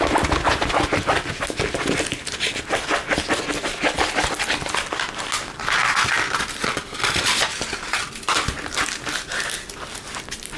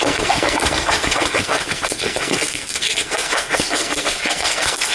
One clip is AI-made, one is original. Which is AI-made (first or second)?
second